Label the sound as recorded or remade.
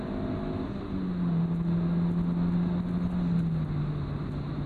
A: recorded